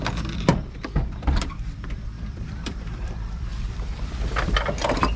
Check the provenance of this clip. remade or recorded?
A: remade